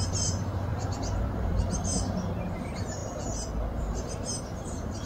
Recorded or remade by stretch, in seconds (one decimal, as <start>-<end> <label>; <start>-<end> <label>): 0.0-0.7 remade; 0.7-1.2 recorded; 1.2-3.0 remade; 3.0-3.8 recorded; 3.8-5.1 remade